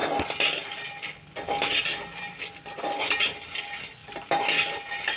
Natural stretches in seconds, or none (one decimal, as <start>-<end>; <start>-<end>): 0.0-4.0; 4.8-5.2